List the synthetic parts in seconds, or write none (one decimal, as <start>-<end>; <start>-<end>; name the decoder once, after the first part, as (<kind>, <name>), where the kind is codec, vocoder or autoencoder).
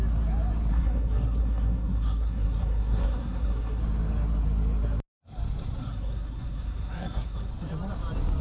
0.7-3.8 (codec, SNAC); 5.8-7.5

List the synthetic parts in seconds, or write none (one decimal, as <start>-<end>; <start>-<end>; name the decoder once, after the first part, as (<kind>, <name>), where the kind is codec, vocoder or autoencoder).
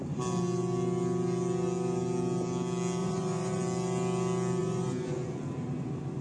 3.0-3.6 (vocoder, Vocos); 4.6-5.4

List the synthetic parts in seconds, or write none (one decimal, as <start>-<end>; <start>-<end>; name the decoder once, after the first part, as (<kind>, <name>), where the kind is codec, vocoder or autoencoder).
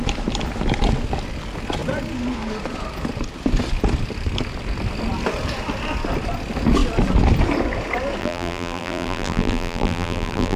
8.2-10.6 (vocoder, BigVGAN v2)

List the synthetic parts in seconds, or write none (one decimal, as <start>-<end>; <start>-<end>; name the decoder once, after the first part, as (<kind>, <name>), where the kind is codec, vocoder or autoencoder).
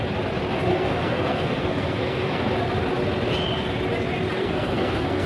0.7-2.4 (codec, SNAC); 4.4-5.3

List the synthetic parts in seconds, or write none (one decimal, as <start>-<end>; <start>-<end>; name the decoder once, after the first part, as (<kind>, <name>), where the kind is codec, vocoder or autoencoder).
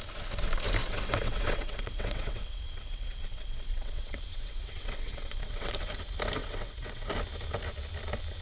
0.8-5.8 (vocoder, WaveNeXt); 6.4-7.1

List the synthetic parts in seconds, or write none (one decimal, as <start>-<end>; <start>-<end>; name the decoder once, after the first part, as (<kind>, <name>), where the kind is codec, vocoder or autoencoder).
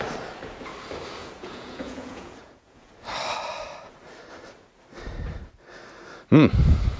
1.2-2.9 (vocoder, Vocos)